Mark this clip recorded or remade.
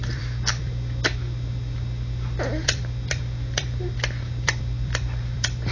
remade